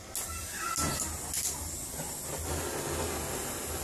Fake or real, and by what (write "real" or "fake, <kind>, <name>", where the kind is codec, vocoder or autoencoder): real